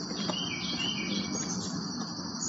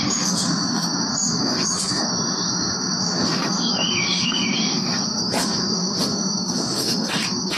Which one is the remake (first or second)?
second